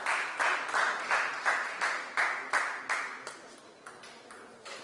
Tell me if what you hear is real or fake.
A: real